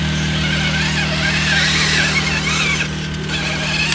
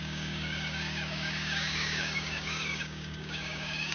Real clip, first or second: first